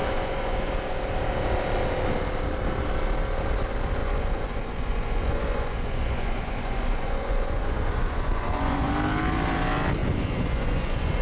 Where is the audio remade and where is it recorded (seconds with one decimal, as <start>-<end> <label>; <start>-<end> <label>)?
0.0-0.7 remade; 0.7-4.0 recorded; 4.0-8.9 remade; 8.9-10.0 recorded; 10.0-11.2 remade